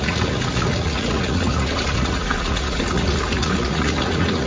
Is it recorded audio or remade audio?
remade